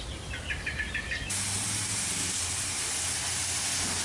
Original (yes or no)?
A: yes